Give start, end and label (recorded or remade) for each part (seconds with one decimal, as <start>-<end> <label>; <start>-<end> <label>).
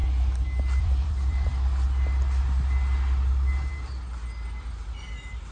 0.0-0.8 recorded; 0.8-1.5 remade; 1.5-4.8 recorded; 4.8-5.5 remade